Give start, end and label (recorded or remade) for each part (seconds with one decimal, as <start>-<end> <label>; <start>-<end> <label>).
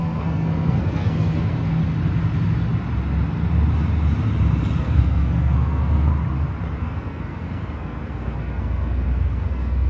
0.0-1.8 remade; 1.8-4.8 recorded; 4.8-6.1 remade; 6.1-6.8 recorded; 6.8-9.9 remade